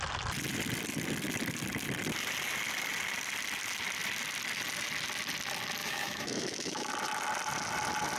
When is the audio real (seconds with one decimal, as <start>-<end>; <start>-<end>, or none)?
0.0-5.8; 6.9-8.2